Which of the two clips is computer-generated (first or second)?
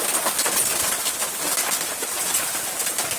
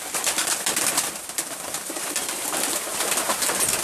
second